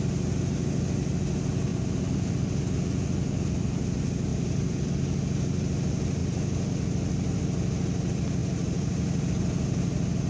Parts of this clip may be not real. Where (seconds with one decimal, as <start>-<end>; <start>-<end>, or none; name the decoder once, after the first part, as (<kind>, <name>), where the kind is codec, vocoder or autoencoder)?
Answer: 4.3-4.9 (vocoder, BigVGAN v2); 8.4-9.3